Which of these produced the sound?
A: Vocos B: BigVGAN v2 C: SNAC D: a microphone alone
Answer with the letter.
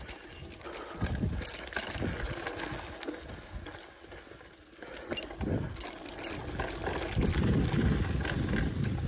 D